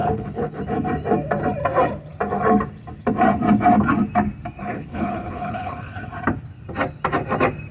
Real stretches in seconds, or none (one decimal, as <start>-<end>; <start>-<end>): 0.6-4.6; 6.0-7.7